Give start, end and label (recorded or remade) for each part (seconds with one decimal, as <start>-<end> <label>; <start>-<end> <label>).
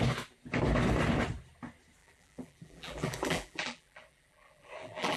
0.0-2.0 recorded; 2.0-5.2 remade